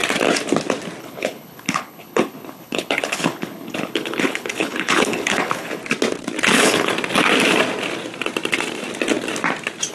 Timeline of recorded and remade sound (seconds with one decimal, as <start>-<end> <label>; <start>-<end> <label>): 0.0-1.0 recorded; 1.0-5.8 remade; 5.8-6.5 recorded; 6.5-6.9 remade; 6.9-9.9 recorded